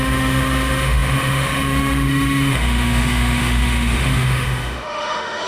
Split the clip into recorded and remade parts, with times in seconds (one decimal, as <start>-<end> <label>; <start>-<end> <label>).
0.0-5.5 remade